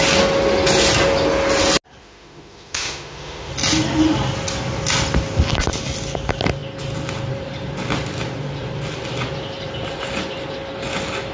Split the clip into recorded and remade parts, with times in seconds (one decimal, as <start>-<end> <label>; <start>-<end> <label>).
0.0-2.0 recorded; 2.0-3.5 remade; 3.5-11.3 recorded